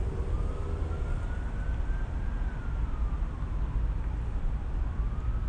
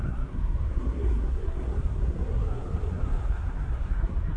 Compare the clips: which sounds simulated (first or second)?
second